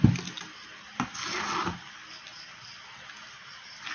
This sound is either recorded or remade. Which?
recorded